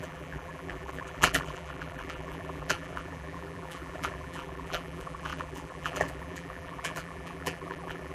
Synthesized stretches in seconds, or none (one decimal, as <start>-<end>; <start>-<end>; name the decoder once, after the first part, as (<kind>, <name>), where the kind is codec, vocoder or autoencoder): 0.0-8.1 (vocoder, BigVGAN v2)